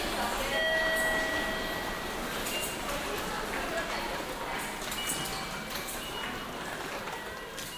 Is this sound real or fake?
real